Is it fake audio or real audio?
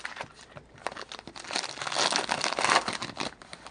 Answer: real